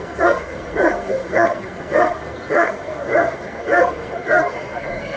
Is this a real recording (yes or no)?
no